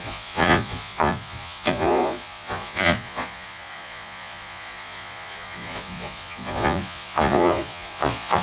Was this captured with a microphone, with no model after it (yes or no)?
no